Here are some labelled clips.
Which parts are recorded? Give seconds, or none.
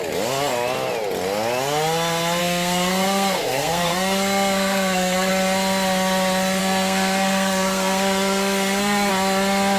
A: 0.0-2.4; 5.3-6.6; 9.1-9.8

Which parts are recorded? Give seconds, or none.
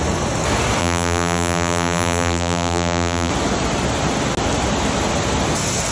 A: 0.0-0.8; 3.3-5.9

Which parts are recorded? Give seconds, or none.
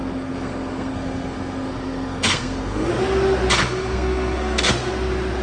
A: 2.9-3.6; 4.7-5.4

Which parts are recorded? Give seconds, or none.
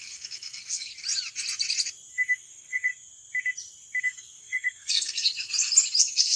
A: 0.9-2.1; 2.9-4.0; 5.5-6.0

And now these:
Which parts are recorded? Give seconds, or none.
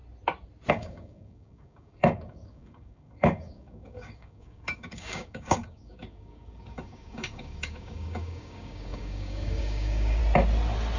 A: 0.0-0.7; 10.2-11.0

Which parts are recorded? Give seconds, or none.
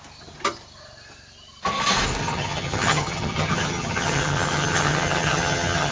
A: 0.0-2.2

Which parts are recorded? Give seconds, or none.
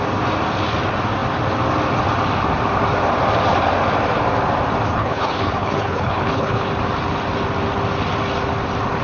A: 0.0-4.9; 6.7-9.0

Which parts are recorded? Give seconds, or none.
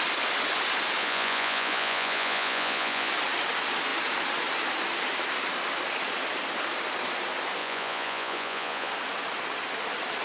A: 0.0-1.0; 3.1-7.6; 8.9-10.2